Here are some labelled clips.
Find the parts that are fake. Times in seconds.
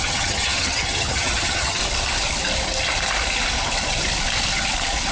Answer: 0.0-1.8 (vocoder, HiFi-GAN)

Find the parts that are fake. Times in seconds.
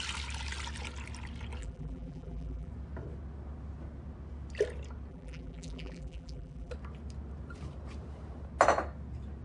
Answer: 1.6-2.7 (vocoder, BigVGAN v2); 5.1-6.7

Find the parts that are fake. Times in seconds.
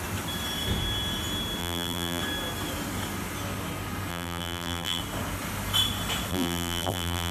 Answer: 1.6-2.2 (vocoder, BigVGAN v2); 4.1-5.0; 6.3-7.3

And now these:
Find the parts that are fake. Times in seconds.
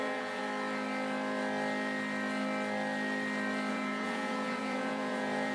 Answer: 0.0-0.4 (vocoder, Vocos); 3.7-5.5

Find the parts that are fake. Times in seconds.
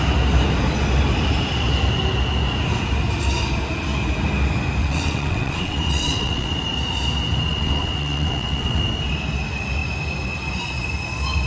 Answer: 4.8-6.5 (vocoder, WaveNeXt); 7.5-8.8